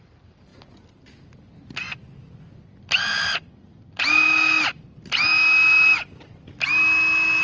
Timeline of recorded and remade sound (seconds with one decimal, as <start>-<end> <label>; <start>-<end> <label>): 0.0-7.4 recorded